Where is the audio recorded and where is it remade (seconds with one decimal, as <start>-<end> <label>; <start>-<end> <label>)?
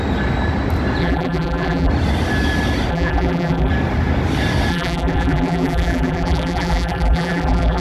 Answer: 0.0-1.0 recorded; 1.0-1.9 remade; 1.9-2.9 recorded; 2.9-3.7 remade; 3.7-4.7 recorded; 4.7-7.8 remade